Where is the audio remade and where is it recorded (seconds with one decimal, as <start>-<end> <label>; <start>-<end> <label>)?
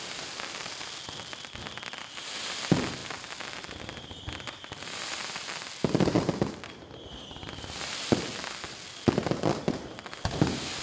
0.0-10.8 recorded